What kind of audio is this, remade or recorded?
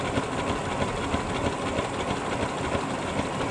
recorded